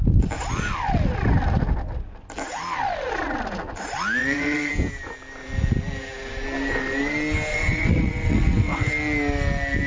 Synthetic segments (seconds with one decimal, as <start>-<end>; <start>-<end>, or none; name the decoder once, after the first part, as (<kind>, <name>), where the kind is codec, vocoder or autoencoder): 4.2-4.7 (vocoder, WaveNeXt); 7.5-8.9